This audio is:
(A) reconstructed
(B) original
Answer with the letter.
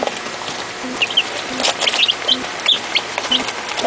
A